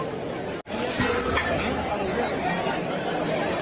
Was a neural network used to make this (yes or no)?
no